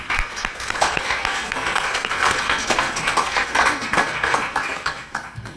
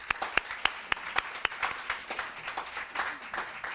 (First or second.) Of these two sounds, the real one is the second